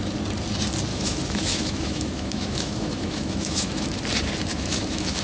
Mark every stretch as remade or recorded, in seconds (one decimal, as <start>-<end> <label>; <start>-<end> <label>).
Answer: 0.0-0.9 recorded; 0.9-4.0 remade; 4.0-4.5 recorded; 4.5-5.2 remade